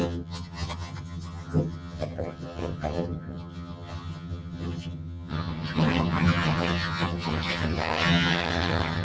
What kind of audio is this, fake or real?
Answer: fake